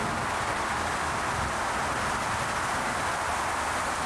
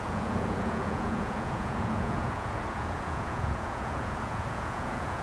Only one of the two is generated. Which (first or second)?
second